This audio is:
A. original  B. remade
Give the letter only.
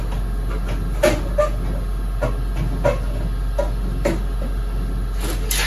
A